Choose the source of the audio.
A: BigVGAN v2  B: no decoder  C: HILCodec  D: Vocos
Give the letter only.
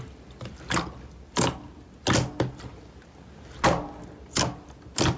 B